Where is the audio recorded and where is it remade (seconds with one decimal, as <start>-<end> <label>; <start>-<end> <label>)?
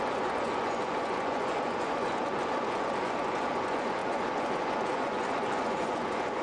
0.0-6.4 remade